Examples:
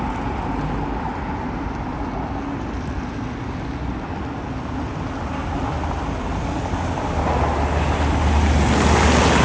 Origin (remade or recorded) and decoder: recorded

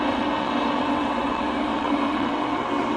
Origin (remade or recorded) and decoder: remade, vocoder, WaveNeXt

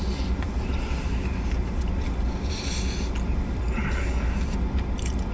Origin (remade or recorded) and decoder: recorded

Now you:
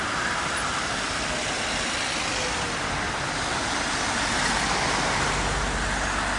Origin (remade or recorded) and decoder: recorded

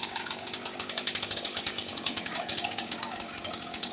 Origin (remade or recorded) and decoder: remade, codec, DAC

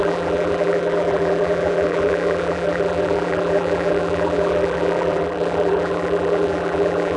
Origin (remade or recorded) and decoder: remade, vocoder, BigVGAN v2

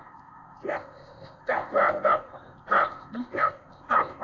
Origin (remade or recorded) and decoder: remade, codec, ZipCodec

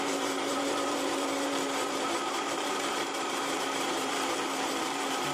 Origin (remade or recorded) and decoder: remade, vocoder, BigVGAN v2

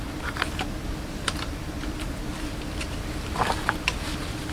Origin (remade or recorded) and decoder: remade, vocoder, BigVGAN v2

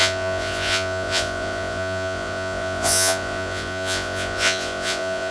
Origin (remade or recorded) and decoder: remade, vocoder, Vocos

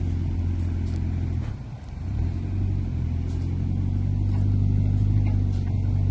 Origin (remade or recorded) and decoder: recorded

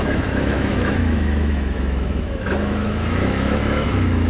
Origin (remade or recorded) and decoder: remade, autoencoder, DAC-VAE